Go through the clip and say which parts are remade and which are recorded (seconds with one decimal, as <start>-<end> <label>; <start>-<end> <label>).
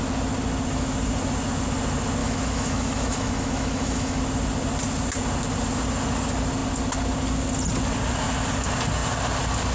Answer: 0.0-2.2 recorded; 2.2-4.2 remade; 4.2-9.7 recorded